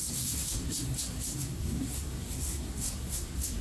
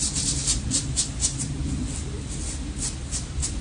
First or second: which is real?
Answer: second